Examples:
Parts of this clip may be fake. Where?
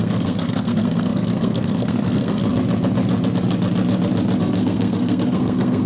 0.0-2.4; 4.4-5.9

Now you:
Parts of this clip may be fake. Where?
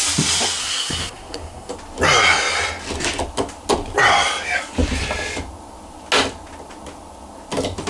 0.6-1.7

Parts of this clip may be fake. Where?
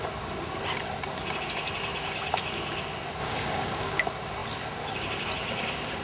3.2-4.0